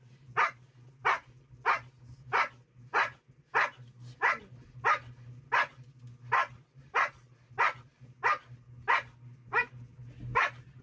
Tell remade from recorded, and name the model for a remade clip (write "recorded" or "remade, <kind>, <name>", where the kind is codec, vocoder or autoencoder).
recorded